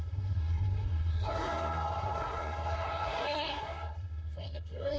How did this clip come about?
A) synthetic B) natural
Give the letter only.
A